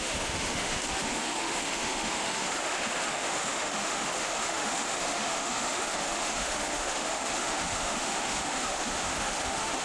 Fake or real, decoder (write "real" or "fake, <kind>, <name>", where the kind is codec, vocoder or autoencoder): fake, autoencoder, DAC-VAE